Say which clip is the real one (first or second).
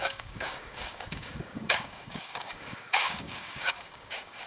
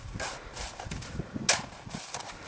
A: second